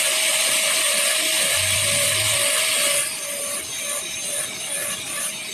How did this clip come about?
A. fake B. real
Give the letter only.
B